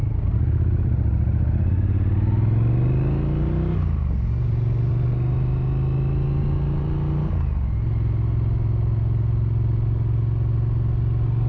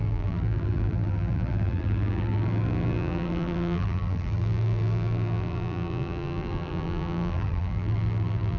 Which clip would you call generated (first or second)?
second